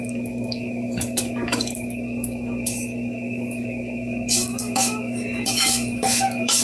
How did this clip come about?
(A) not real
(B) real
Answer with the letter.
A